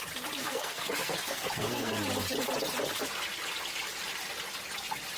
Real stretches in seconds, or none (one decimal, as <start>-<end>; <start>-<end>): 0.0-0.4; 1.9-5.2